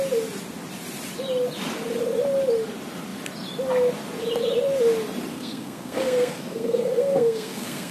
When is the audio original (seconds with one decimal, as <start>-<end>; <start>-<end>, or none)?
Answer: 0.0-5.3